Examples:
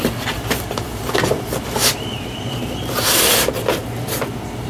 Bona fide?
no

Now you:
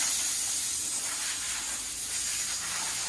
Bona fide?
yes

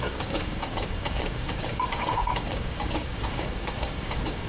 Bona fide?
no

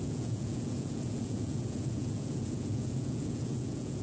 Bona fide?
no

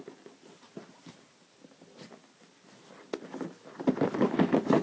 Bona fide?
yes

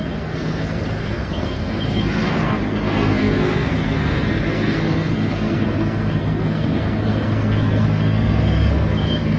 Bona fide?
no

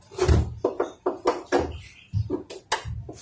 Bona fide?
yes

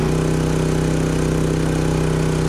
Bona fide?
yes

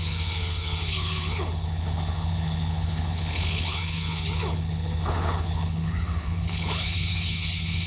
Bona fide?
no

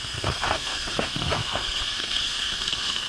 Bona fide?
no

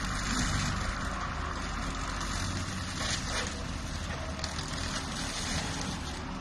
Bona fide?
yes